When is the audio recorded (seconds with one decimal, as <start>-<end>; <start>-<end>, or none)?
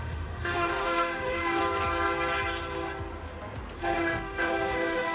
1.6-3.8